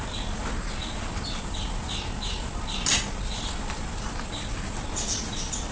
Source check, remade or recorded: recorded